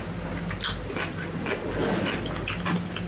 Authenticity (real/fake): real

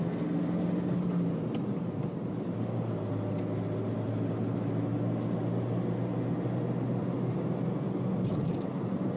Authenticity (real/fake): real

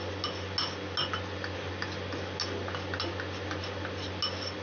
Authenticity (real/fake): real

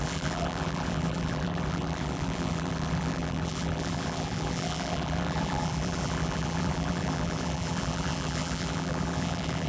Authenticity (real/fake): fake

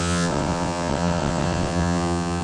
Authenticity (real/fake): fake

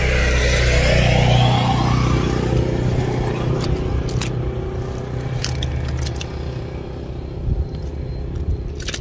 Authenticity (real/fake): real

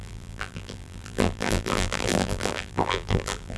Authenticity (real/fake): fake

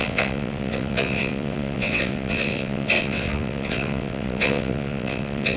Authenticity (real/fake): fake